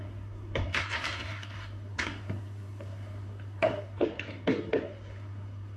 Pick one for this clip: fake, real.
fake